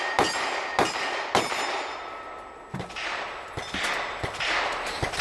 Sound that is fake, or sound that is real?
real